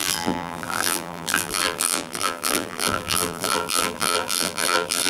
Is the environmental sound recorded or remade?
remade